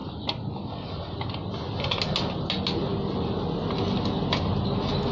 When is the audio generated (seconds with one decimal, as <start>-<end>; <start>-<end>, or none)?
none